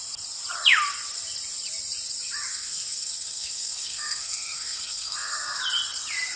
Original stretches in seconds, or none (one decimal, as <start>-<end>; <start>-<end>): 0.0-2.5; 5.6-6.4